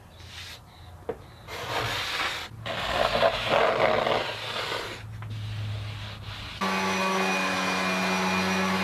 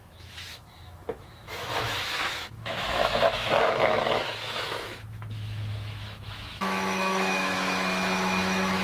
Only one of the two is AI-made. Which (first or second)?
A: second